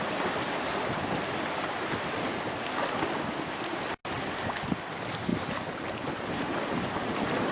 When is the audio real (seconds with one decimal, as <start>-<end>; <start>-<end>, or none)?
0.0-7.5